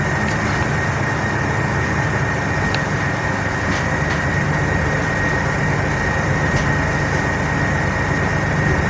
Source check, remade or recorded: recorded